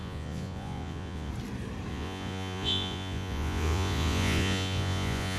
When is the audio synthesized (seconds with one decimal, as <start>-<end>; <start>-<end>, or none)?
0.0-1.3; 1.9-5.4